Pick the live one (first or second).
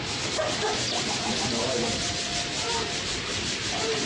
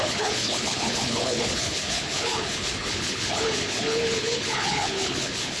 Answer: first